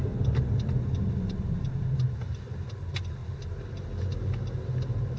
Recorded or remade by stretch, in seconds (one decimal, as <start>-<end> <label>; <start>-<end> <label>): 0.0-5.2 recorded